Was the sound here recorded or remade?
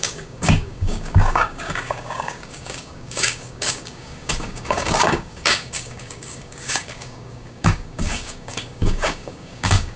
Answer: remade